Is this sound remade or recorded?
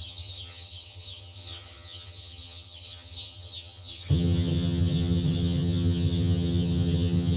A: remade